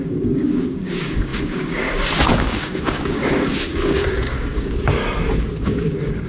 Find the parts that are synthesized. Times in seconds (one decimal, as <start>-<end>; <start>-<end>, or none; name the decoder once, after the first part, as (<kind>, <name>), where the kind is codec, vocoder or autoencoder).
0.0-5.0 (codec, DAC); 5.5-6.3

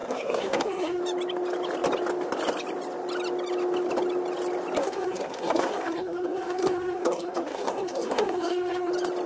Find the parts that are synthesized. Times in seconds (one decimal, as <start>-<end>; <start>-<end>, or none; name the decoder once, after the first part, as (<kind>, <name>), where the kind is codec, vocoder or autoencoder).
0.0-1.0 (codec, SNAC); 4.8-8.9

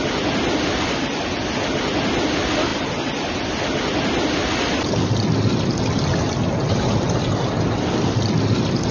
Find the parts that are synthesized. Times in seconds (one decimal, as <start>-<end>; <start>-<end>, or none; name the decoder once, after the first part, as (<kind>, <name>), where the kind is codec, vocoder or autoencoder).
none

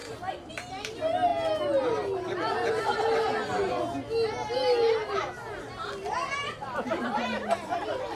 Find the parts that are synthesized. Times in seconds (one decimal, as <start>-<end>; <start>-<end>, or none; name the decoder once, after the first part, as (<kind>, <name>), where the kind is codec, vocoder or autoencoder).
none

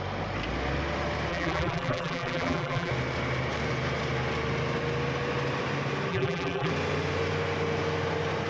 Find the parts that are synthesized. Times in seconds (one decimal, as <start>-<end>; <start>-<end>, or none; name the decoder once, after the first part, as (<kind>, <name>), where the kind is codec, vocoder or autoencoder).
1.3-2.9 (vocoder, BigVGAN v2); 6.1-6.7

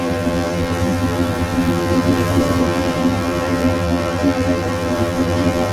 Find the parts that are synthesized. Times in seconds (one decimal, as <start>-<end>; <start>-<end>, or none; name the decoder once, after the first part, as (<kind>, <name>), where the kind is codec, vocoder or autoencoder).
0.0-5.7 (vocoder, BigVGAN v2)